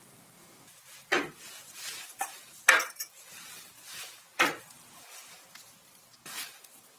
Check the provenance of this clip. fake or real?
real